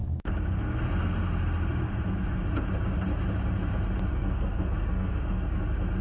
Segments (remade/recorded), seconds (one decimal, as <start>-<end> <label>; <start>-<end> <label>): 0.0-4.1 recorded; 4.1-5.6 remade; 5.6-6.0 recorded